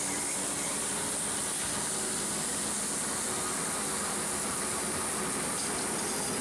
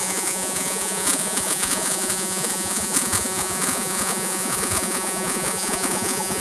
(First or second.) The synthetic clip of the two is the second